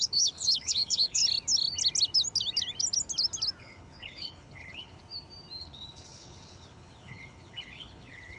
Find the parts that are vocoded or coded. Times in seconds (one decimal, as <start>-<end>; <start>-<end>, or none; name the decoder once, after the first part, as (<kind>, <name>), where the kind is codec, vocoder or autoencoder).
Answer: 0.0-1.2 (codec, HILCodec); 3.6-5.0; 5.6-8.4